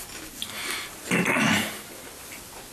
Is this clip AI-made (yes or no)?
no